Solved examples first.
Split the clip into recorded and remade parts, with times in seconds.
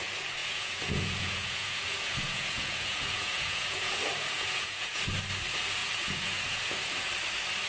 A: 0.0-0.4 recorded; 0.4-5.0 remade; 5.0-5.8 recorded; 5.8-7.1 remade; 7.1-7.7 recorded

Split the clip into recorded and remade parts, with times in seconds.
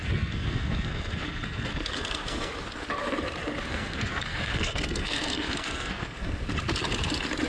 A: 0.0-2.5 remade; 2.5-3.7 recorded; 3.7-6.4 remade; 6.4-7.5 recorded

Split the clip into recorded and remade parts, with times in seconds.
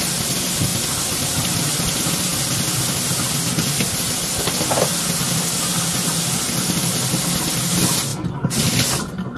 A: 0.0-0.7 recorded; 0.7-1.7 remade; 1.7-9.4 recorded